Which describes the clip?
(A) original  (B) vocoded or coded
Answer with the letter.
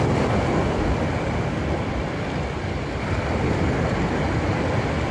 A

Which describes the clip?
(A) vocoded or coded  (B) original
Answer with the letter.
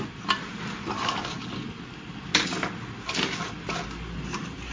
B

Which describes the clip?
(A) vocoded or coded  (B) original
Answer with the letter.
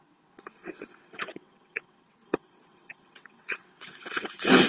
A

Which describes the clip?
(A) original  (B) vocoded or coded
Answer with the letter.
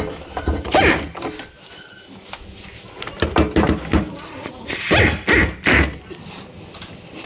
A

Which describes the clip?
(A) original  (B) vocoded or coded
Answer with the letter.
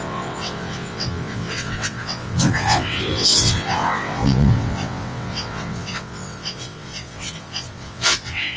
B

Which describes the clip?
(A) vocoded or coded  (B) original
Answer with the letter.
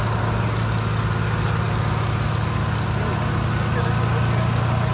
B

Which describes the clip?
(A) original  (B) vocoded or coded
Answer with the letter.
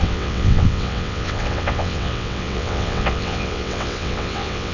B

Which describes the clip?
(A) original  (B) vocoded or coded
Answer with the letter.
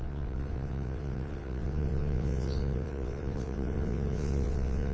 B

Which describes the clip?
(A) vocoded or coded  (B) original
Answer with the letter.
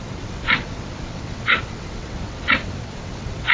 A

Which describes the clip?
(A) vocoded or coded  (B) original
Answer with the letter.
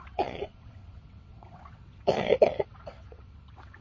A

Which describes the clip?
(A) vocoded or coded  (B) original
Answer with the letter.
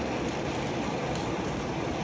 B